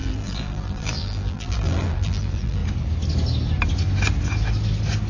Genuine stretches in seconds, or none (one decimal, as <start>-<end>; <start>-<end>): 2.6-5.1